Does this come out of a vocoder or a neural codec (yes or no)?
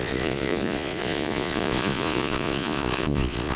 yes